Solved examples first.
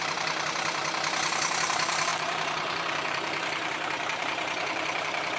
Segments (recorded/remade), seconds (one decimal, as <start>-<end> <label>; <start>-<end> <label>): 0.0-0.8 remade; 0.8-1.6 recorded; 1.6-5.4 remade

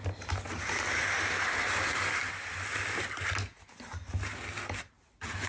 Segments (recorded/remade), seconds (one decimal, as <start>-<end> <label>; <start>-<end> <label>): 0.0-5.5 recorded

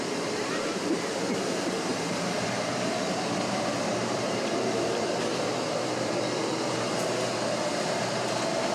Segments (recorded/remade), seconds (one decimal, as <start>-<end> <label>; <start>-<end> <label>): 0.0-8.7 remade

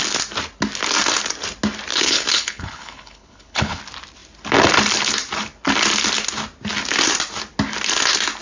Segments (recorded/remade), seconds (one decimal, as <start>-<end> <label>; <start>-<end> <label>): 0.0-1.9 recorded; 1.9-3.8 remade; 3.8-8.4 recorded

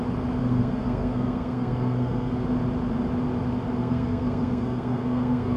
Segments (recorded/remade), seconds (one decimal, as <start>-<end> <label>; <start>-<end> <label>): 0.0-0.4 recorded; 0.4-2.3 remade; 2.3-3.8 recorded; 3.8-5.6 remade

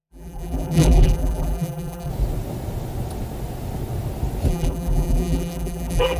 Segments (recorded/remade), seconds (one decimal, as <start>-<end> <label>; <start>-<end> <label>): 0.0-2.1 remade; 2.1-4.5 recorded; 4.5-6.2 remade

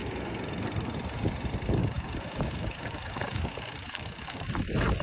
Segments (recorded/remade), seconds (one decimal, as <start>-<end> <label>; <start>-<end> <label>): 0.0-1.8 recorded; 1.8-4.5 remade; 4.5-5.0 recorded